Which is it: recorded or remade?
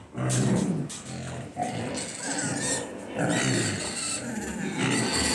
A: recorded